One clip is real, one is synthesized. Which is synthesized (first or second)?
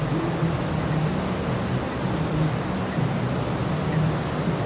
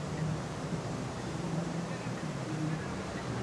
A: second